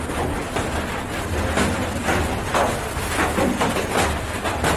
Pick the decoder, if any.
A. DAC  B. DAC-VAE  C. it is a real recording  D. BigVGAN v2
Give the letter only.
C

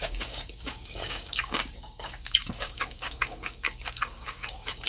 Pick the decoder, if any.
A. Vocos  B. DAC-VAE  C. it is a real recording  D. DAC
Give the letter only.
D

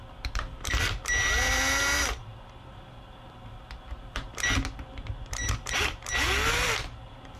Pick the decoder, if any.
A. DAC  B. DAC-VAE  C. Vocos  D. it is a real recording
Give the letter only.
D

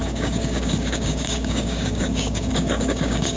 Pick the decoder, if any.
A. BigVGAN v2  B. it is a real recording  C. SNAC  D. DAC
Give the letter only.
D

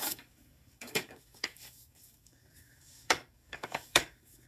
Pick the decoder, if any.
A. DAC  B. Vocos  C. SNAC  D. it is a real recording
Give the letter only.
A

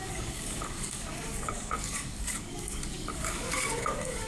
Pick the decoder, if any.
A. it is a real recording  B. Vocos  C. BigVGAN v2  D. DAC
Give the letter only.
D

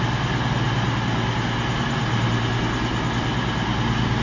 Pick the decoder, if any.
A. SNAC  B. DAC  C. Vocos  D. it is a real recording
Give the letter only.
D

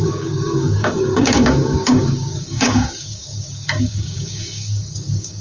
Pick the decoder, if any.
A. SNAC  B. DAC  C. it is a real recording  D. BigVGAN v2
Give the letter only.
B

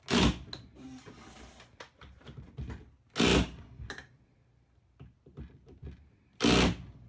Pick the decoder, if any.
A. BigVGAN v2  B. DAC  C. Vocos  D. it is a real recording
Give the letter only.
D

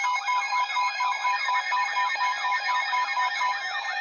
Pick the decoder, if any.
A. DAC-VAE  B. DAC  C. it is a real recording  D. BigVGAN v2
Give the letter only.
B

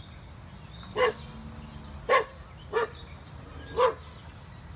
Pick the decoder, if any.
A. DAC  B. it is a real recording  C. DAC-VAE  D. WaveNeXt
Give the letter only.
B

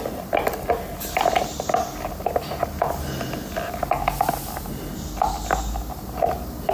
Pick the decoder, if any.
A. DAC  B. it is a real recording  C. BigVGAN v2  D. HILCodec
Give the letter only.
B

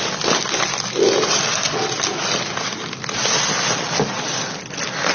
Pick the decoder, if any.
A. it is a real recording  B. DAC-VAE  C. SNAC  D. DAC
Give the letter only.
A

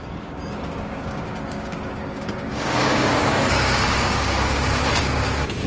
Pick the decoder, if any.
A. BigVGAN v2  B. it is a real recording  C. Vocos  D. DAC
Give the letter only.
D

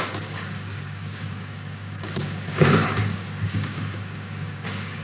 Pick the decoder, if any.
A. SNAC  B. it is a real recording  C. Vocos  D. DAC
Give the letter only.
D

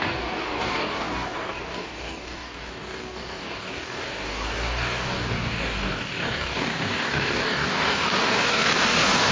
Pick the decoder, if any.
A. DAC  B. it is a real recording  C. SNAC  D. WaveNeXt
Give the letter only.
A